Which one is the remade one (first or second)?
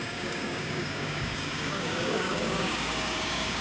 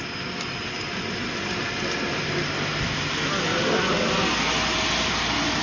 first